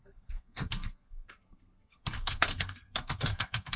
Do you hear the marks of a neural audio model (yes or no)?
yes